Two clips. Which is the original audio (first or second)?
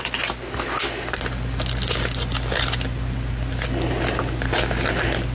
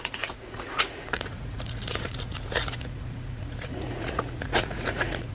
first